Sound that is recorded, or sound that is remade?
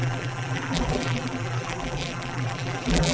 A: remade